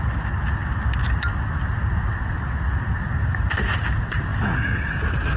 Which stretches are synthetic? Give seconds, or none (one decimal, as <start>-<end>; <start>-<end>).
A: none